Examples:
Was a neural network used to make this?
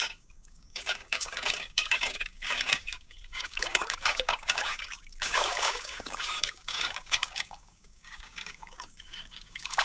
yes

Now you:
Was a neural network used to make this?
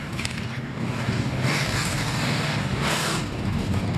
yes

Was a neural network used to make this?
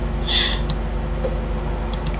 no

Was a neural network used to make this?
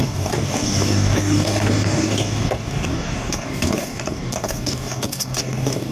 yes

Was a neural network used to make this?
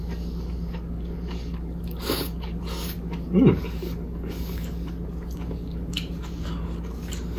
yes